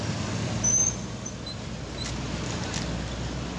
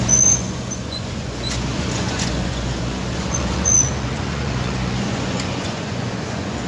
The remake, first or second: second